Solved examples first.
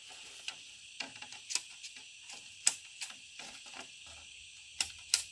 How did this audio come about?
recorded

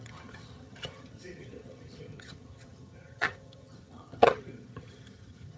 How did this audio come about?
remade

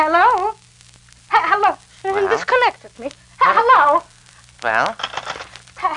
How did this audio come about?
recorded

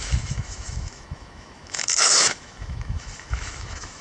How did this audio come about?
remade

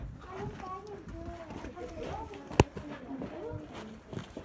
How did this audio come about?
recorded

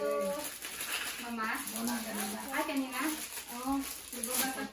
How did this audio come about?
recorded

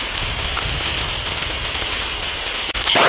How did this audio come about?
recorded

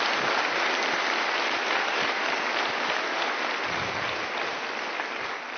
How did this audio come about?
recorded